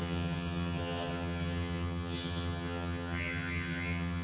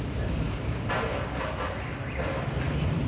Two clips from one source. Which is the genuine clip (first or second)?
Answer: second